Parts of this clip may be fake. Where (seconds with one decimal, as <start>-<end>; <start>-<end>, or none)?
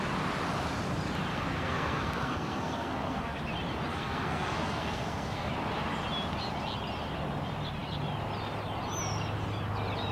1.3-3.4; 3.9-5.5